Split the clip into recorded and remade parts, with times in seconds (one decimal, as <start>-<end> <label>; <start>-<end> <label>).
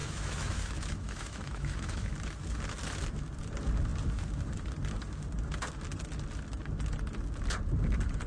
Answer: 0.0-2.1 remade; 2.1-8.3 recorded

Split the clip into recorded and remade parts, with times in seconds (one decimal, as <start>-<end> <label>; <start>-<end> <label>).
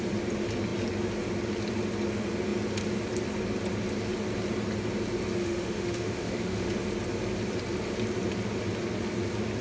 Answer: 0.0-5.4 recorded; 5.4-6.7 remade; 6.7-9.6 recorded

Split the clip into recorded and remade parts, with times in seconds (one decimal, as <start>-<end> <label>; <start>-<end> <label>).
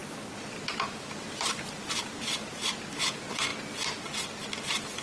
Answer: 0.0-5.0 recorded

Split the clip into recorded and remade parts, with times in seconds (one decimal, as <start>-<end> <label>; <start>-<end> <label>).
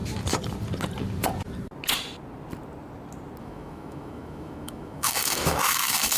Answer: 0.0-3.4 recorded; 3.4-6.2 remade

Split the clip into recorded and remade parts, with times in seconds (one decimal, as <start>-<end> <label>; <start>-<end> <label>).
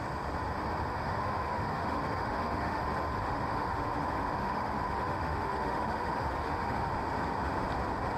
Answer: 0.0-0.9 recorded; 0.9-2.8 remade; 2.8-3.2 recorded; 3.2-6.9 remade; 6.9-8.2 recorded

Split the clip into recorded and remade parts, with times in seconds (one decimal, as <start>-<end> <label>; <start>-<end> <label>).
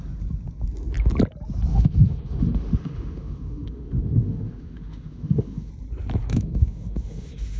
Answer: 0.0-1.7 recorded; 1.7-5.7 remade; 5.7-6.2 recorded; 6.2-7.6 remade